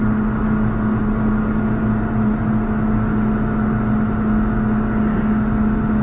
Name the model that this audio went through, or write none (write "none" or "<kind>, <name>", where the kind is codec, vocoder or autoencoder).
none